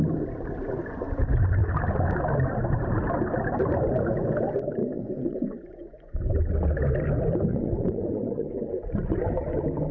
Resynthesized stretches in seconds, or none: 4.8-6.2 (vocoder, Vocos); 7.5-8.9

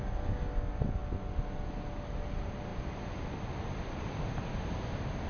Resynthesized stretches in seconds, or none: none